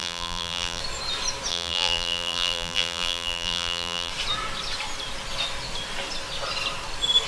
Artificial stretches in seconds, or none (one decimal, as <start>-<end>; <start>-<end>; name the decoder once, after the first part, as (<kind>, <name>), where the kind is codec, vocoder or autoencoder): 0.0-0.8 (vocoder, BigVGAN v2); 1.5-4.1